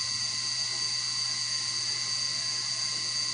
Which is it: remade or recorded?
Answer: recorded